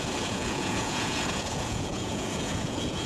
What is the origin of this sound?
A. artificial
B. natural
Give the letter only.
A